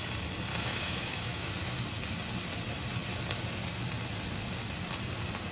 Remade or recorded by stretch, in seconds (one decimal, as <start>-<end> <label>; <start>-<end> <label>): 0.0-0.5 recorded; 0.5-1.5 remade; 1.5-5.5 recorded